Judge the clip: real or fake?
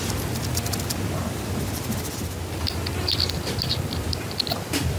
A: real